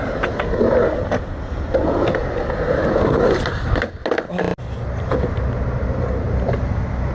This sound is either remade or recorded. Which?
recorded